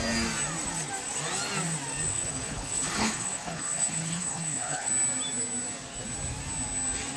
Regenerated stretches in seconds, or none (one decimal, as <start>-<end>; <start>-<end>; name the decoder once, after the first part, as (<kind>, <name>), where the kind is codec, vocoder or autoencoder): 2.1-4.9 (codec, HILCodec)